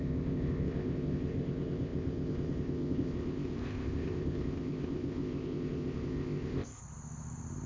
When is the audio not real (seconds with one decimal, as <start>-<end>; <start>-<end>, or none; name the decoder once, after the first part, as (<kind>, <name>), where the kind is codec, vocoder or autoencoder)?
0.0-6.8 (codec, ZipCodec)